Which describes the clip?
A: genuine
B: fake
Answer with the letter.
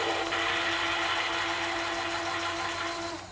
A